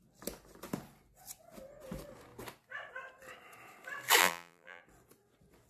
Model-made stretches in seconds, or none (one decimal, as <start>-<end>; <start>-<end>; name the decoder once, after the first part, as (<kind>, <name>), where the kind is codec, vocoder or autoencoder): 4.2-4.8 (vocoder, BigVGAN v2)